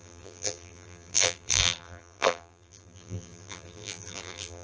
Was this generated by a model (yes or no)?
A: yes